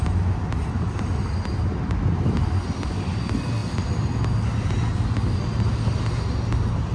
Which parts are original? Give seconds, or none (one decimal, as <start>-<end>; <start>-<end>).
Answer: 0.0-0.6; 1.5-6.9